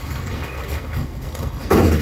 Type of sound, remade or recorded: remade